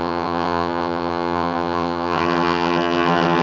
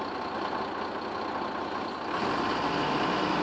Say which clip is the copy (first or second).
first